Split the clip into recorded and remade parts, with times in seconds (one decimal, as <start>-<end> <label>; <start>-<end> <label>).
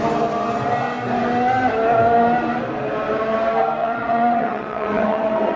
0.0-3.8 recorded; 3.8-5.6 remade